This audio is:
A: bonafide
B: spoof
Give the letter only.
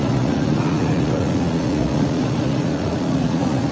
B